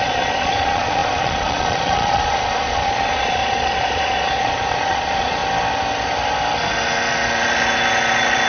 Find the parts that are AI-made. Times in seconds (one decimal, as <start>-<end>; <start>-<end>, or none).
0.0-5.4

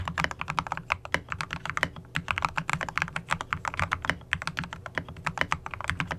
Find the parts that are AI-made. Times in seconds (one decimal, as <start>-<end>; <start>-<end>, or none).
none

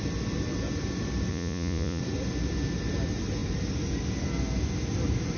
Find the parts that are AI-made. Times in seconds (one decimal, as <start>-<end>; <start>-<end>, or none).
1.3-2.0

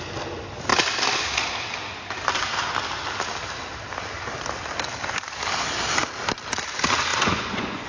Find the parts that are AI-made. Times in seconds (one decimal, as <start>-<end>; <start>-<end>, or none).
7.1-7.9